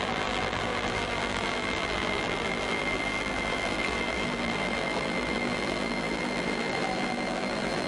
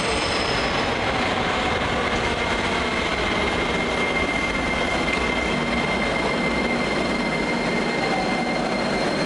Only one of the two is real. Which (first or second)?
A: second